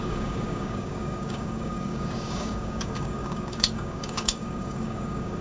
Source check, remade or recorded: remade